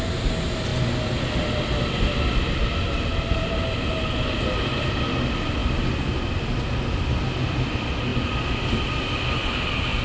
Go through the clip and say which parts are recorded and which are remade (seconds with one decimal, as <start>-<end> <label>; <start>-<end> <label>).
0.0-10.0 recorded